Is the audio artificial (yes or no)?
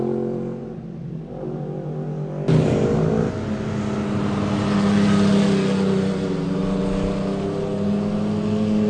no